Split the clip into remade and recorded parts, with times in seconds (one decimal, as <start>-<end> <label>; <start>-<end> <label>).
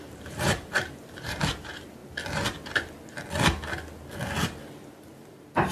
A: 0.0-2.0 remade; 2.0-5.7 recorded